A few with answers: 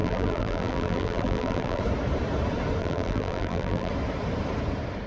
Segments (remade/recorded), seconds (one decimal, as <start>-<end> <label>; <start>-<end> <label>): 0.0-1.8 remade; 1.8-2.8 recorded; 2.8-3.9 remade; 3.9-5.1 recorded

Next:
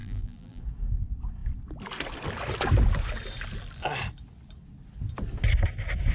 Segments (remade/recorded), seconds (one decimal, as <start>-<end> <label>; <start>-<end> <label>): 0.0-0.6 remade; 0.6-6.1 recorded

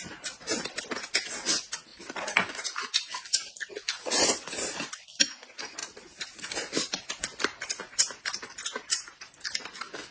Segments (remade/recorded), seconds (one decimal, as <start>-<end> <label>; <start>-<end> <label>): 0.0-1.9 recorded; 1.9-5.2 remade; 5.2-5.8 recorded; 5.8-6.4 remade; 6.4-10.1 recorded